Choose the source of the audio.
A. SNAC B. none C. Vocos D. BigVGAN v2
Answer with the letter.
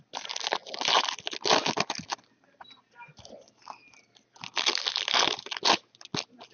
B